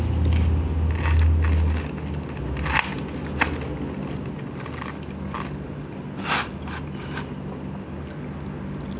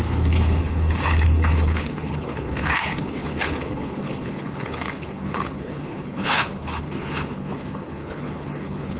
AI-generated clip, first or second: second